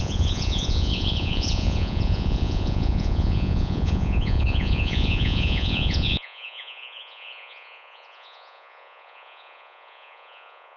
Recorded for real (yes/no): no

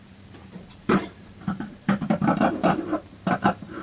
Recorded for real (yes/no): no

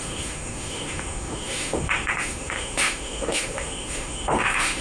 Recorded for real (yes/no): no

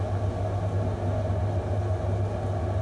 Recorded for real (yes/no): yes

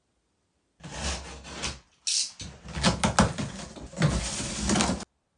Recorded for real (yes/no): yes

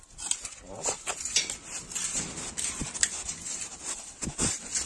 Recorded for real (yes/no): yes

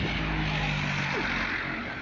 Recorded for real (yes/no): yes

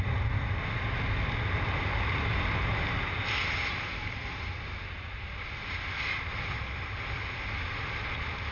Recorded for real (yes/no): yes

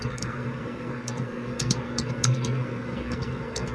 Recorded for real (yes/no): no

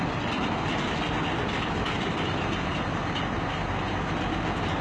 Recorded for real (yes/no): yes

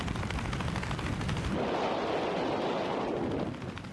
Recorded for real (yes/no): yes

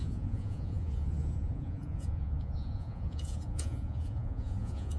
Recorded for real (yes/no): no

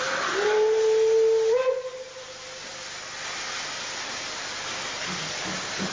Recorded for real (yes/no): yes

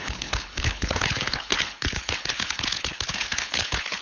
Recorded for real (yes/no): no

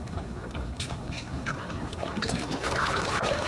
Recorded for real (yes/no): no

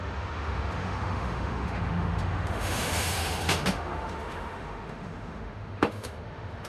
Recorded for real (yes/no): no